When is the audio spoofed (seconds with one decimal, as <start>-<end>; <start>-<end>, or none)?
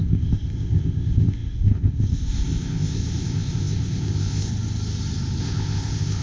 0.0-4.5; 5.4-6.2